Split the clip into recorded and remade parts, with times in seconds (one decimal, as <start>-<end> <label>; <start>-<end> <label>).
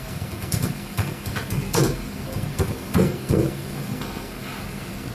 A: 0.0-5.1 remade